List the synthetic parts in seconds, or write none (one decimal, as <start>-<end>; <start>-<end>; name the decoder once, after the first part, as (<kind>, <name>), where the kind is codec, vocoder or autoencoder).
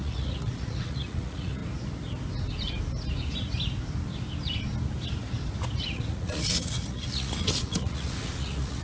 0.0-1.6 (vocoder, Vocos); 5.8-8.8